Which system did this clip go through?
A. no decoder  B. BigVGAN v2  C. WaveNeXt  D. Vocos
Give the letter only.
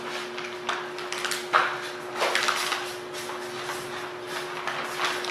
A